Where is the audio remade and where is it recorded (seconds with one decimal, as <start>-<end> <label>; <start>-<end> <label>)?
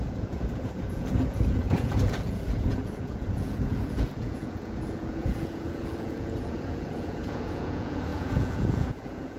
0.0-9.4 remade